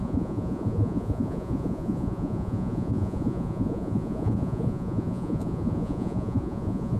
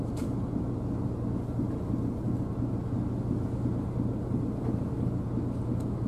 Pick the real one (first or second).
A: second